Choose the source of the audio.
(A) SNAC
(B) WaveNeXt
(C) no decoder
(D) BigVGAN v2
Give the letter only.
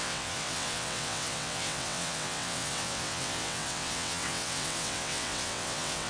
B